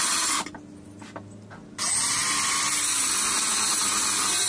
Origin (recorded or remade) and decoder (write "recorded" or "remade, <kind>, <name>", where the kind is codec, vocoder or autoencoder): recorded